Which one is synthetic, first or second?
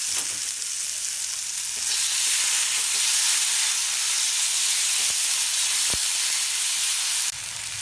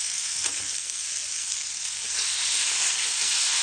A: second